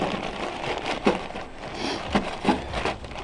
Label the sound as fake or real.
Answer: real